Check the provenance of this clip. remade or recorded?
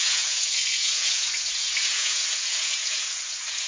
remade